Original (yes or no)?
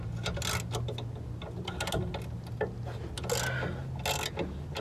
yes